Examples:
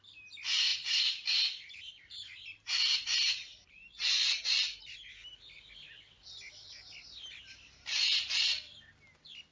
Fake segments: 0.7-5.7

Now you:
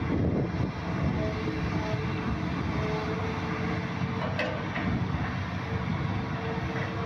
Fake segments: none

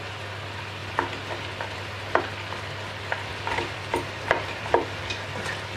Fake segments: 3.3-5.0

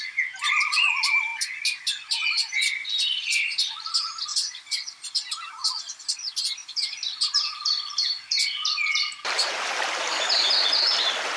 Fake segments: 4.3-5.5; 6.6-10.5

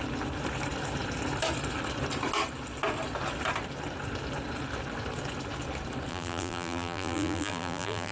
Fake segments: 6.1-8.1

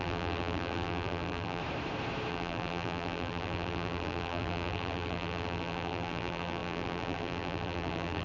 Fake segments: 0.0-1.6; 2.3-8.2

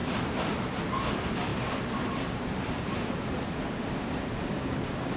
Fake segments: 0.0-0.5; 1.5-3.4

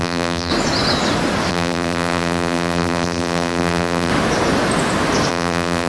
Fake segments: 0.0-0.5; 1.5-4.1; 5.3-5.9